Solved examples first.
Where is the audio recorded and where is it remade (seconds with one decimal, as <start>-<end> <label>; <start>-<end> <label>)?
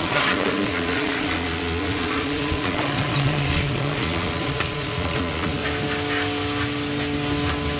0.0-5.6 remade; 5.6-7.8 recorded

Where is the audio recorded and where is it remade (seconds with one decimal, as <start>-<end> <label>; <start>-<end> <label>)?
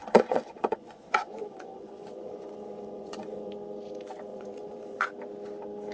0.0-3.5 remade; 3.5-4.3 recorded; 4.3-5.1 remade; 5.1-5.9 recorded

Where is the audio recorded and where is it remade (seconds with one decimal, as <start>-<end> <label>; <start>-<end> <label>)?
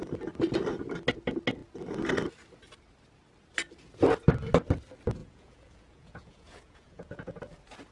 0.0-5.2 recorded; 5.2-7.4 remade; 7.4-7.9 recorded